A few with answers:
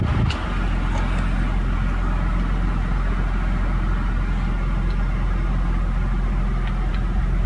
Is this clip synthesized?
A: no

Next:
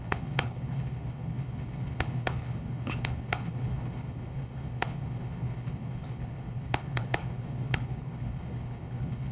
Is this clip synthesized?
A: yes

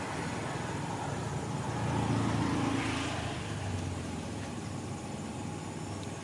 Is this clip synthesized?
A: no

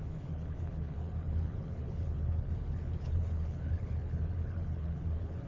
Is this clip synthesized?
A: yes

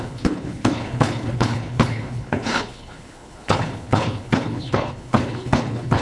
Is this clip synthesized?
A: yes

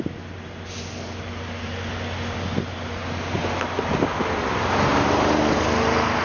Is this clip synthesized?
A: no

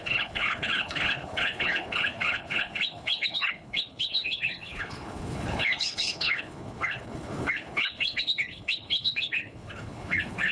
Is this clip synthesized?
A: yes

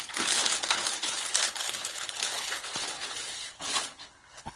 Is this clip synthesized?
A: yes